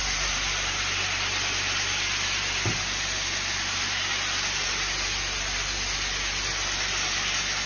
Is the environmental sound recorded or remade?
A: recorded